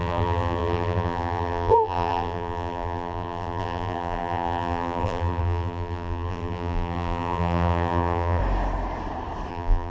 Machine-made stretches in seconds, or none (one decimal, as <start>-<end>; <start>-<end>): 0.0-8.4; 9.5-9.9